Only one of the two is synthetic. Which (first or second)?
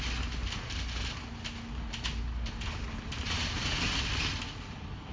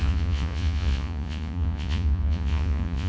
second